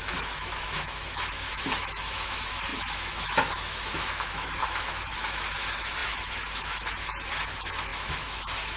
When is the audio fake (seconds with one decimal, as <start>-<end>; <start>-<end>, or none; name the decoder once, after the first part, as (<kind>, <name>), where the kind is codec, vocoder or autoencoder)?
0.0-8.8 (autoencoder, DAC-VAE)